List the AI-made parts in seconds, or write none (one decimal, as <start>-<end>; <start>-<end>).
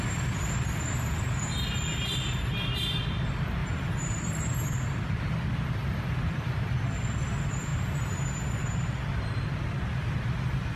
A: 0.4-2.1; 3.6-4.2; 7.7-8.4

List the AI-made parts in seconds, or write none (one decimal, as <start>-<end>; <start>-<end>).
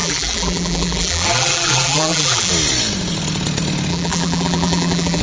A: 0.0-2.5; 3.9-5.2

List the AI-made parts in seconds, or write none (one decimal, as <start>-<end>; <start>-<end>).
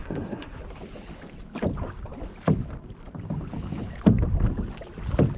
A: 0.0-0.6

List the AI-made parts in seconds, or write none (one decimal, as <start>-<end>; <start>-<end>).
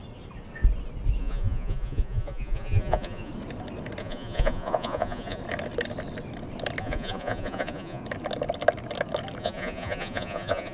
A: 1.2-3.3; 4.0-5.4; 6.8-8.0; 9.4-10.7